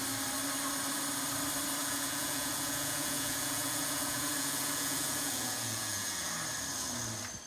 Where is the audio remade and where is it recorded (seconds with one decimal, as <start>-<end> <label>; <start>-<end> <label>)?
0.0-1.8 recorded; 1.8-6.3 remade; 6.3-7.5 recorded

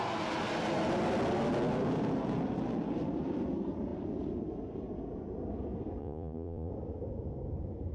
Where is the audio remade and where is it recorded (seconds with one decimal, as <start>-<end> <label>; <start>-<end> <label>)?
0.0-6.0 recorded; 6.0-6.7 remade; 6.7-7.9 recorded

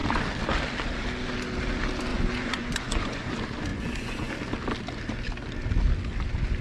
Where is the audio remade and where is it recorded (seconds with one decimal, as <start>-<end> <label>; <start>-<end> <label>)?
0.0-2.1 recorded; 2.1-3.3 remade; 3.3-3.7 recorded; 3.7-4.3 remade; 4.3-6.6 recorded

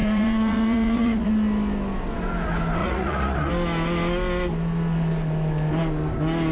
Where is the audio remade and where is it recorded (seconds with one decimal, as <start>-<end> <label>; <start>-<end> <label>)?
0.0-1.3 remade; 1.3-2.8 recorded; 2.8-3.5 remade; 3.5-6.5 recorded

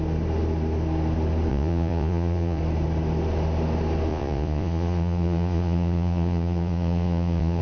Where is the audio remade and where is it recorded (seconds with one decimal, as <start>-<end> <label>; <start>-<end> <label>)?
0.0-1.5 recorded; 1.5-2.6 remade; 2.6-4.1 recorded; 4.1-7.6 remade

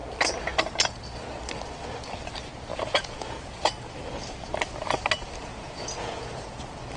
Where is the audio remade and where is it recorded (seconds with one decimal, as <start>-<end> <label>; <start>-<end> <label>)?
0.0-2.7 recorded; 2.7-3.7 remade; 3.7-5.5 recorded; 5.5-6.6 remade; 6.6-7.0 recorded

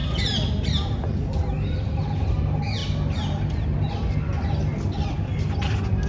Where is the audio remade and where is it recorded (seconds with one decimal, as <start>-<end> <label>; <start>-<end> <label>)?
0.0-6.1 recorded